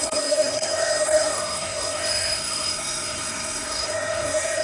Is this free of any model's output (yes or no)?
no